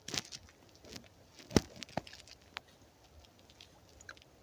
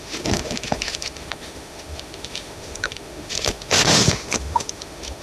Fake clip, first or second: second